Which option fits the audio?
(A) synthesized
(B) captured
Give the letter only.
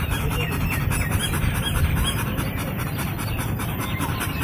A